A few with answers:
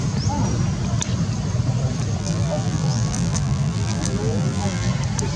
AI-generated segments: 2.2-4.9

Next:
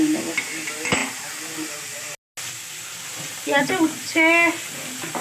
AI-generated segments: none

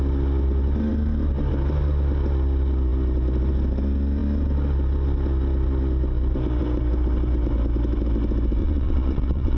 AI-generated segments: 8.6-9.6